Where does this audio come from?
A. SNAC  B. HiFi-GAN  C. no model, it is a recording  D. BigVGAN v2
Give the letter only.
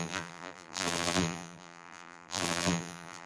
D